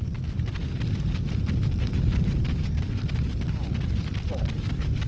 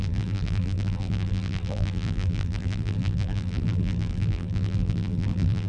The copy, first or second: second